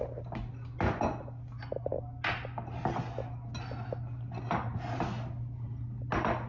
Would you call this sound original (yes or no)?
yes